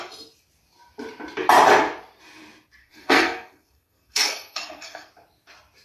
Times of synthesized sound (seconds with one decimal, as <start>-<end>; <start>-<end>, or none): 2.8-5.1